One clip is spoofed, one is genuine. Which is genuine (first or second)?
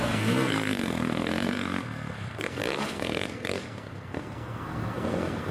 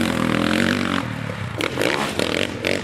second